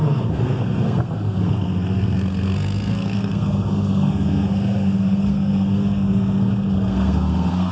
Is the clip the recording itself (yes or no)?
no